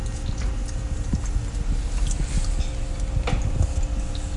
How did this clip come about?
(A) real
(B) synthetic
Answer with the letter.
A